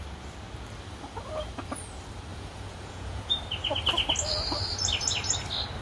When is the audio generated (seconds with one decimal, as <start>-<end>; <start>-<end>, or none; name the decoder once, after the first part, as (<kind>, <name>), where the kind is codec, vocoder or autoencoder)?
2.3-3.4 (vocoder, Vocos)